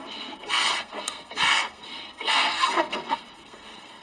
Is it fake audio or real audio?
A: fake